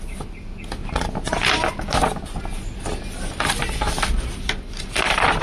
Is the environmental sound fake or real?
real